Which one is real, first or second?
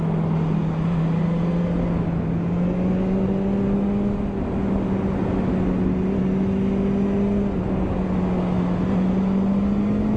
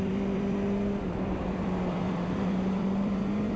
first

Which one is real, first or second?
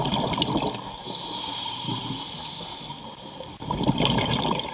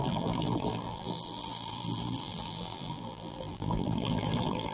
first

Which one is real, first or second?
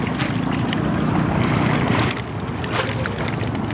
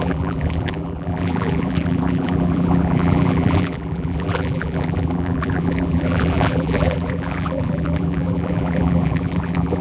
first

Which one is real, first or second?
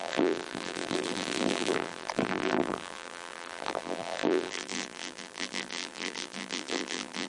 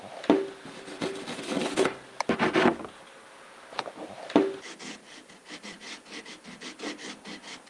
second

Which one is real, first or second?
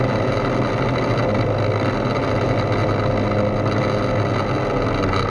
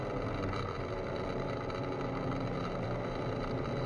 first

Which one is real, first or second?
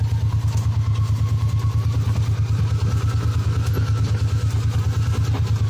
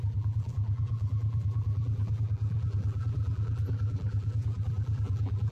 first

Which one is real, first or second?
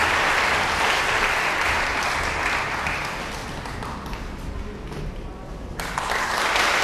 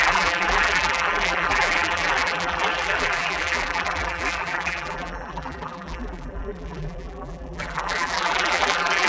first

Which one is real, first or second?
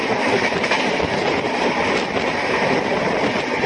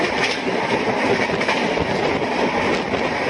second